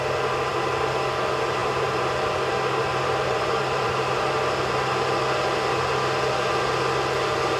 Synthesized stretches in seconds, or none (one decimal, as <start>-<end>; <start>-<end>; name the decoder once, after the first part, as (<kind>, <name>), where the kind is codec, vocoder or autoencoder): 1.6-2.5 (vocoder, BigVGAN v2); 2.9-4.3